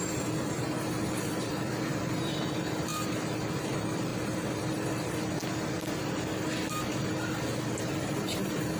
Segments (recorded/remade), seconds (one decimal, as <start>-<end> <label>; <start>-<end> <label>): 0.0-4.1 remade; 4.1-7.8 recorded; 7.8-8.8 remade